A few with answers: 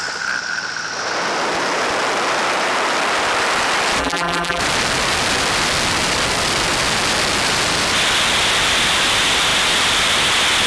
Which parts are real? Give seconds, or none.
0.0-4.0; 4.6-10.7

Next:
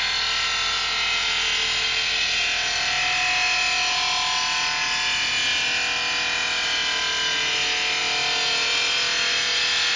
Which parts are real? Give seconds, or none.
0.0-10.0

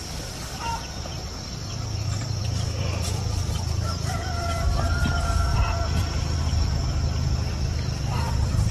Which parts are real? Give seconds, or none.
0.0-8.7

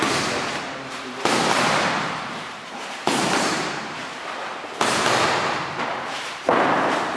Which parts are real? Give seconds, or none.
4.0-5.9

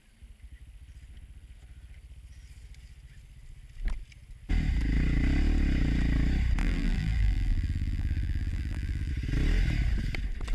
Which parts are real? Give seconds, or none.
0.0-6.6; 9.1-10.5